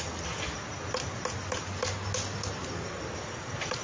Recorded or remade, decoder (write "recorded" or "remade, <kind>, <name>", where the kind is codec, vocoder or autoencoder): recorded